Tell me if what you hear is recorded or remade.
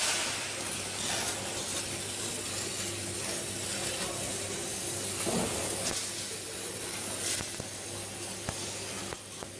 recorded